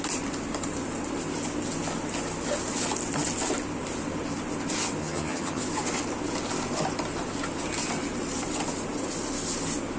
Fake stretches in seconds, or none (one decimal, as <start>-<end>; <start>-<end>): 5.0-5.6